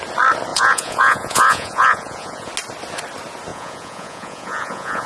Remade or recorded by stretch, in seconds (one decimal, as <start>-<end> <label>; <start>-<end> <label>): 0.0-0.5 recorded; 0.5-2.5 remade; 2.5-3.5 recorded; 3.5-5.1 remade